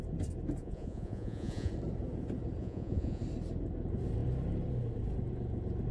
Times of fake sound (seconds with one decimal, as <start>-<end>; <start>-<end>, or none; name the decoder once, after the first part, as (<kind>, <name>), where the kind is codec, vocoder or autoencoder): 0.6-1.7 (vocoder, Vocos); 2.6-3.2